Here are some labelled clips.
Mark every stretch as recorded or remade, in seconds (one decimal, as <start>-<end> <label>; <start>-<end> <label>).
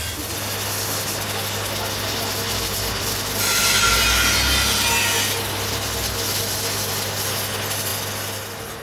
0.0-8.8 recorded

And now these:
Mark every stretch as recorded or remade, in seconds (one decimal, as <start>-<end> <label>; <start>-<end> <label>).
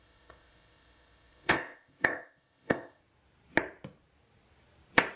0.0-3.0 remade; 3.0-5.2 recorded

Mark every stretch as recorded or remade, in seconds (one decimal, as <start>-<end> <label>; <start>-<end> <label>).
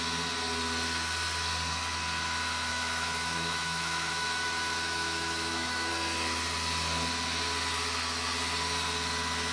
0.0-2.7 recorded; 2.7-5.9 remade; 5.9-9.5 recorded